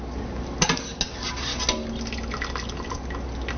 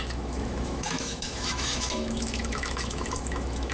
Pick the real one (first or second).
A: first